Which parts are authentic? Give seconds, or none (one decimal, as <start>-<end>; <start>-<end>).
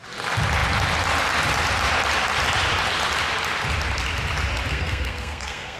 0.0-4.7